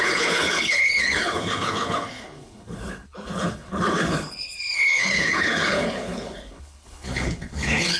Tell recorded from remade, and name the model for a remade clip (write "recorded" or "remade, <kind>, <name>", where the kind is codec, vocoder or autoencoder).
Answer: remade, codec, HILCodec